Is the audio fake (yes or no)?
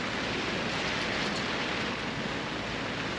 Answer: no